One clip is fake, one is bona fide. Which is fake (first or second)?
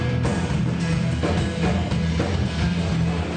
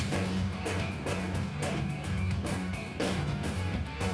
second